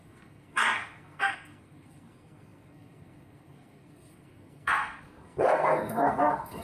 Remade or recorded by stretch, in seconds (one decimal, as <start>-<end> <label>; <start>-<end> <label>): 0.0-6.6 remade